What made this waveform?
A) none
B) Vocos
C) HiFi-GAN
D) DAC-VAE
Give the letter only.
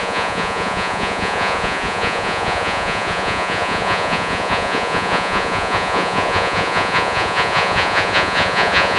B